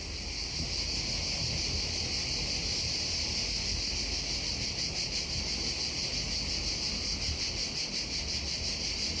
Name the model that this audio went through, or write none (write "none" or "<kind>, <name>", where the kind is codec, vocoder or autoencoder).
none